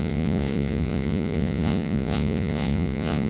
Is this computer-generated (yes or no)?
yes